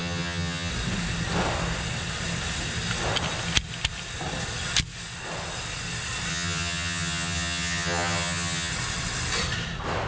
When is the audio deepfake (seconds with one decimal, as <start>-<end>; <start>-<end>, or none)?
0.0-0.7; 6.3-8.7